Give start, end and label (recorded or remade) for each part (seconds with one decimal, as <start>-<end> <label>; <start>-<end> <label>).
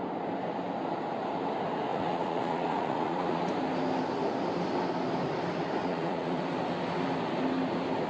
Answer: 0.0-1.9 recorded; 1.9-3.4 remade; 3.4-5.8 recorded; 5.8-6.4 remade; 6.4-8.1 recorded